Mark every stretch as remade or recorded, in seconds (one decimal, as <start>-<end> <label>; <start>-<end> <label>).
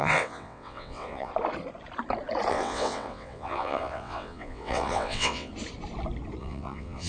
0.0-1.3 remade; 1.3-2.5 recorded; 2.5-5.5 remade; 5.5-6.4 recorded; 6.4-7.1 remade